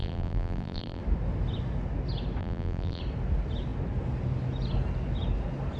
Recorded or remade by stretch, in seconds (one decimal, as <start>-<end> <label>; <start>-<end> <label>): 0.0-1.0 remade; 1.0-2.4 recorded; 2.4-3.0 remade; 3.0-5.8 recorded